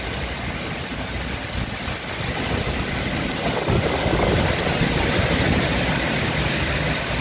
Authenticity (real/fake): real